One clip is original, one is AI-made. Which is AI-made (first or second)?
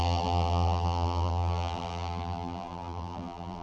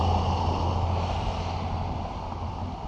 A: first